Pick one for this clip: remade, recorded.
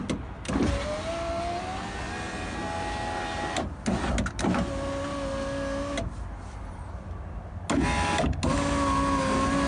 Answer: recorded